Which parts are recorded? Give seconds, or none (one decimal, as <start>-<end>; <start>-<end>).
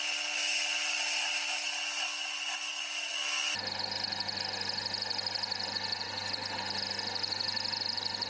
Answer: 0.0-8.3